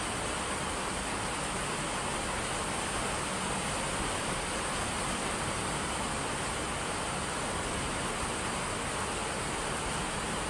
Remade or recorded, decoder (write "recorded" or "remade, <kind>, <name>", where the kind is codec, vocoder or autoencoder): recorded